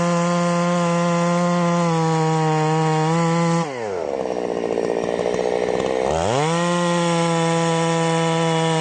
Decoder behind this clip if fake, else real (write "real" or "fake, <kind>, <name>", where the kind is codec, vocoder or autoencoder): real